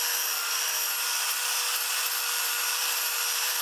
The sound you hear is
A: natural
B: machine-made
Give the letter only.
A